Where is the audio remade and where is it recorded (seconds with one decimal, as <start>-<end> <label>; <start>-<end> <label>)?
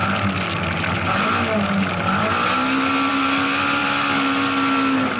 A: 0.0-5.2 recorded